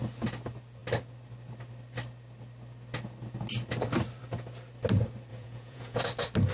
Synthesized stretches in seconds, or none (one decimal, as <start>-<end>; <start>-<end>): 5.3-6.0